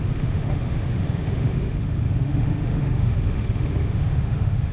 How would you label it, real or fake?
fake